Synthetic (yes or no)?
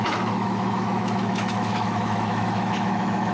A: yes